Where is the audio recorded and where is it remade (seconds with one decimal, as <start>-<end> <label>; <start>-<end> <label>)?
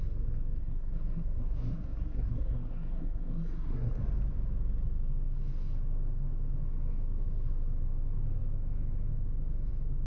0.0-0.6 recorded; 0.6-4.0 remade; 4.0-10.1 recorded